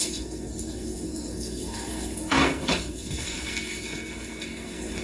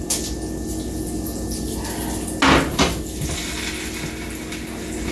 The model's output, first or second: first